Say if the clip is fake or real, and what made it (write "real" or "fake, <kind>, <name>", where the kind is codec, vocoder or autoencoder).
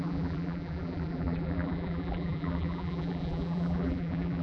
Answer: fake, vocoder, BigVGAN v2